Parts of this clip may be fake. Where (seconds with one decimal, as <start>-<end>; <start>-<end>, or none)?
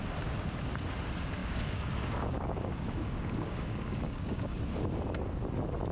1.4-4.6